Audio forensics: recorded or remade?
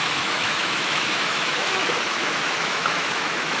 remade